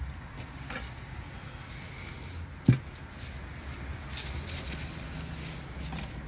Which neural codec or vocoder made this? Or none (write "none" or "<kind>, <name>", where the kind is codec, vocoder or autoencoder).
none